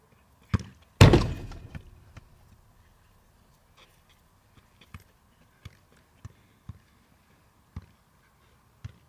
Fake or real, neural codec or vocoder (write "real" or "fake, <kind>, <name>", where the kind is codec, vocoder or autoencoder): real